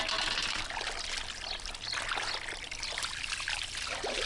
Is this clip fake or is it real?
real